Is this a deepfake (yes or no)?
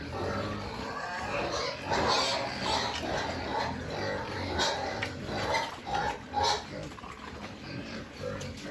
no